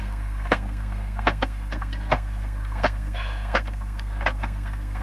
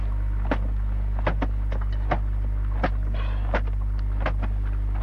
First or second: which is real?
second